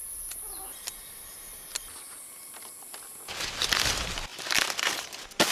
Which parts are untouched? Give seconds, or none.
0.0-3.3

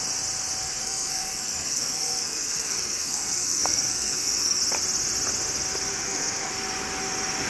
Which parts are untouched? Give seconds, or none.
0.0-0.6; 4.6-5.9; 6.5-7.5

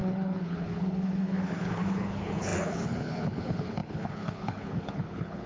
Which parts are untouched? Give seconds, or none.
none

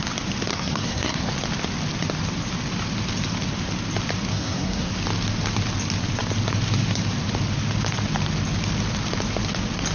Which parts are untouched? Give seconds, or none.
0.0-0.5; 1.3-4.3; 4.9-9.9

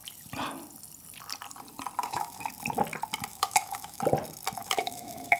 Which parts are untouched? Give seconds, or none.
0.0-2.0; 2.5-3.3; 4.0-4.6

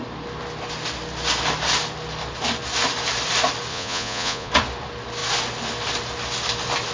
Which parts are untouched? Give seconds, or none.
0.0-3.7; 4.5-6.9